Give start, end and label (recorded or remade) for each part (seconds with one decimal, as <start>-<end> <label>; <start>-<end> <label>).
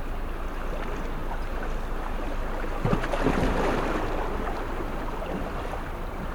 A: 0.0-6.3 recorded